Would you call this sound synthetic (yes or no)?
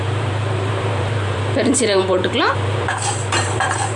yes